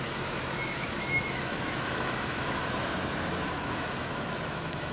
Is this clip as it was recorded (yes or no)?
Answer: no